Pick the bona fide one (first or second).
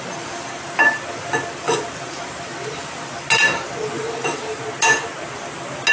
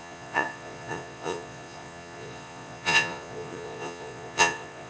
first